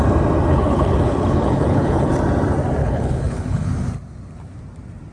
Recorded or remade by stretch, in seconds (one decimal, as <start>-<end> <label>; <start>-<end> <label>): 0.0-0.5 recorded; 0.5-2.1 remade; 2.1-2.8 recorded; 2.8-3.7 remade; 3.7-5.1 recorded